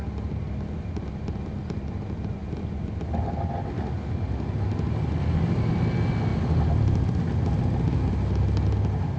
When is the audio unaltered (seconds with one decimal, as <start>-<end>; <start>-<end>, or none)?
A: 0.0-9.2